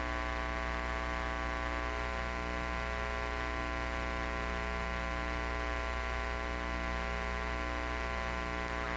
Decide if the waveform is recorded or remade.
recorded